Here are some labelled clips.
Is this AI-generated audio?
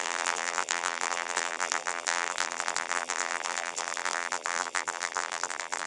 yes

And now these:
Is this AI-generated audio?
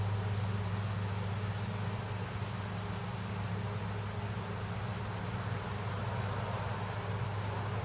no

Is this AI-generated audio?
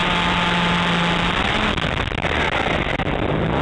no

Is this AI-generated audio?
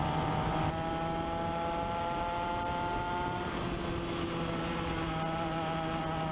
no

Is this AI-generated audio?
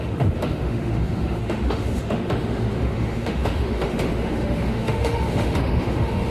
yes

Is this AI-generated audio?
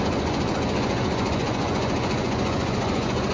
yes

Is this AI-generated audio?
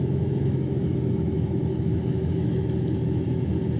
yes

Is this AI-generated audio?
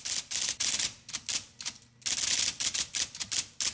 no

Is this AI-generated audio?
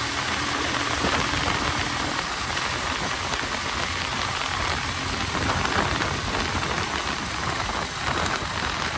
no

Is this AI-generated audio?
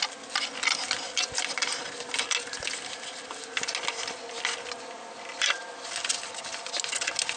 no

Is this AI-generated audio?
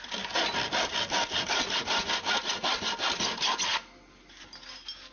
no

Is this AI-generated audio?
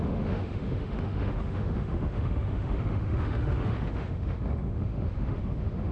yes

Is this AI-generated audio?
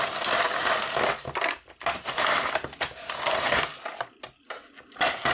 no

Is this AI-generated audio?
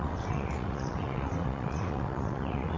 yes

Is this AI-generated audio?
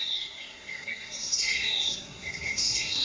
yes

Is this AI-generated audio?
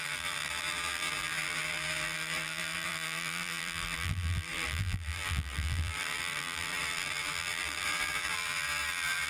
yes